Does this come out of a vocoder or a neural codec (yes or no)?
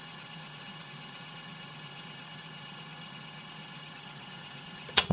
yes